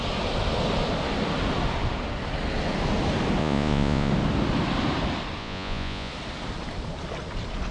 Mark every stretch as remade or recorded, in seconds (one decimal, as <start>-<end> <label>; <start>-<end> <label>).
0.0-3.4 recorded; 3.4-4.1 remade; 4.1-5.4 recorded; 5.4-6.1 remade; 6.1-7.7 recorded